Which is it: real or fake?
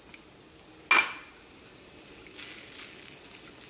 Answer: real